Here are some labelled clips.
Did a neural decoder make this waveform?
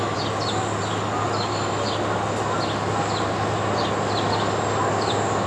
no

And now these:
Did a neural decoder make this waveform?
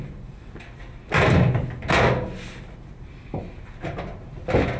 no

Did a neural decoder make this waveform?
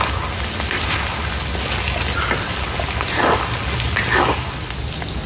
no